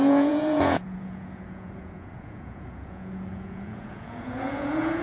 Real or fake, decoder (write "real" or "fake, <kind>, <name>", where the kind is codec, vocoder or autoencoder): fake, vocoder, Vocos